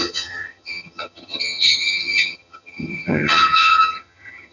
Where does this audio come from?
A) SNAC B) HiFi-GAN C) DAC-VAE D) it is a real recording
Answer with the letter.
B